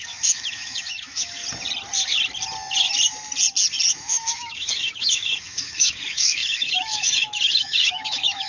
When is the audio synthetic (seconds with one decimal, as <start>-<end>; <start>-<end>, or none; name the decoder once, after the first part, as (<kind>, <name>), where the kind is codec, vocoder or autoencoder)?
0.0-1.4 (autoencoder, DAC-VAE); 3.9-8.5